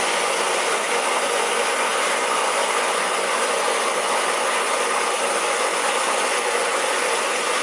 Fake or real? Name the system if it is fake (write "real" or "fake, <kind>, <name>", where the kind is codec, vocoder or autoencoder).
fake, vocoder, Vocos